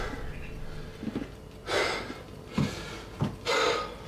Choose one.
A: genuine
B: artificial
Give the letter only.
A